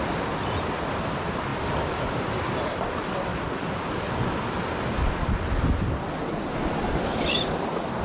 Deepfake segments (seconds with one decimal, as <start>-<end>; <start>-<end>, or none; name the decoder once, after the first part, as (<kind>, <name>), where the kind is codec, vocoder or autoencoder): none

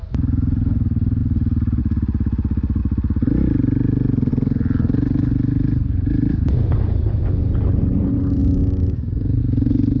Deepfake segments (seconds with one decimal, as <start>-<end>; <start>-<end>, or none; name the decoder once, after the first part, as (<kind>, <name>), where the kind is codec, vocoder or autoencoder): 8.4-9.4 (codec, DAC)